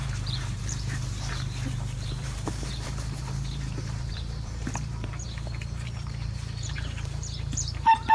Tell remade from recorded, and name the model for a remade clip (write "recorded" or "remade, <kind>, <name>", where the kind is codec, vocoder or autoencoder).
remade, vocoder, BigVGAN v2